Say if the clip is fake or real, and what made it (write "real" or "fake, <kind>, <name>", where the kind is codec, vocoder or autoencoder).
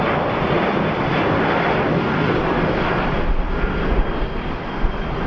real